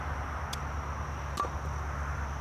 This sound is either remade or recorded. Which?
recorded